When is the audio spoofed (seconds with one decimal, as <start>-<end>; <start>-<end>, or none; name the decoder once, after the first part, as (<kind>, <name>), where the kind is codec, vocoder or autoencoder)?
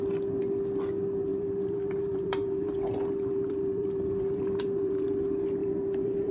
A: 1.3-5.1 (vocoder, BigVGAN v2); 5.6-6.3